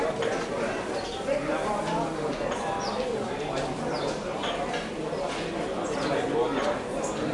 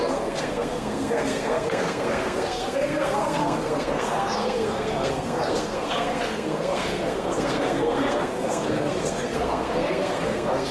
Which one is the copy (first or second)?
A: second